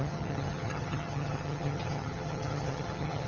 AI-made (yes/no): yes